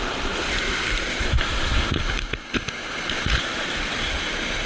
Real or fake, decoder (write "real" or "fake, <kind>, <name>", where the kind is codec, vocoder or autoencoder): real